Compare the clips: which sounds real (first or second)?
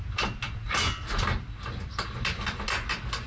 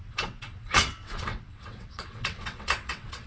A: first